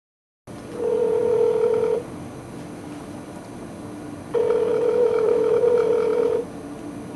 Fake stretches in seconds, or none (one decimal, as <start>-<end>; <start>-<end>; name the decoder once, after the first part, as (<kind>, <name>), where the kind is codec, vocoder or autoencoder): 4.7-5.6 (autoencoder, DAC-VAE)